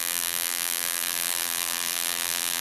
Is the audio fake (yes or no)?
yes